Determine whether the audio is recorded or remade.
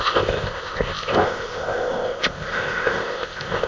remade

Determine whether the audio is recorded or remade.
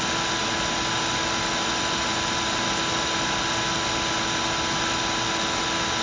recorded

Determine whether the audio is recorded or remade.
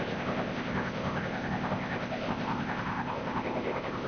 remade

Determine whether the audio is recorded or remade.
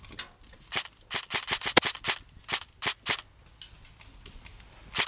recorded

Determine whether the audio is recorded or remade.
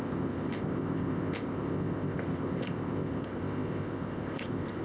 remade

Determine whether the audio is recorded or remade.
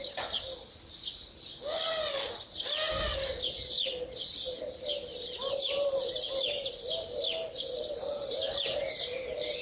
recorded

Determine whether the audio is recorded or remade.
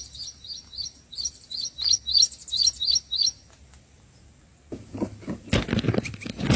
recorded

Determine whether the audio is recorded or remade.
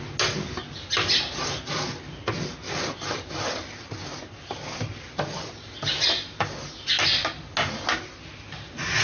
recorded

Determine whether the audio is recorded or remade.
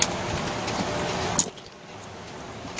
recorded